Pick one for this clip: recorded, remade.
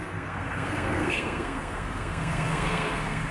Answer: remade